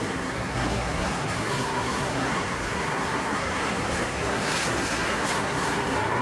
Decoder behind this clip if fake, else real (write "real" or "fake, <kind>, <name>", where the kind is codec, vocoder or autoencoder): fake, codec, SNAC